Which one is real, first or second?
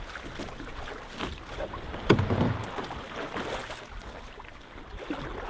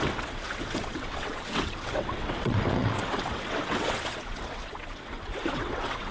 first